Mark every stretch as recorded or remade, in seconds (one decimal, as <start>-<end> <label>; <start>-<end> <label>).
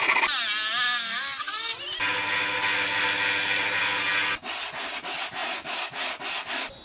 0.0-6.8 recorded